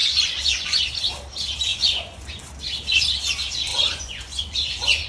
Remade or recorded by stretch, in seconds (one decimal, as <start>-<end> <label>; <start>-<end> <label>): 0.0-0.8 remade; 0.8-1.7 recorded; 1.7-2.4 remade; 2.4-3.7 recorded; 3.7-5.1 remade